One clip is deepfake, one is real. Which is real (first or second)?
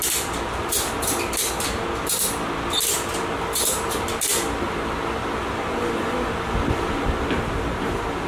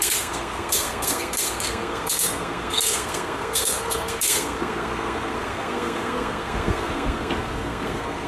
first